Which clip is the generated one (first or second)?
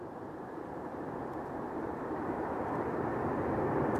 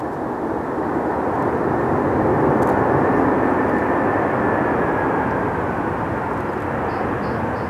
first